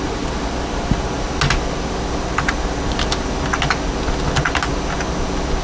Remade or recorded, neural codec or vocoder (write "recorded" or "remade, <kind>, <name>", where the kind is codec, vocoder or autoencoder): recorded